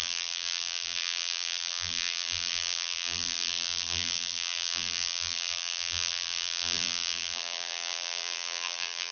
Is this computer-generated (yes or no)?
yes